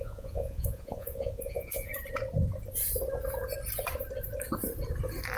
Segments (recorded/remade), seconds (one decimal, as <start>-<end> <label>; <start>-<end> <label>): 0.0-1.9 remade; 1.9-5.4 recorded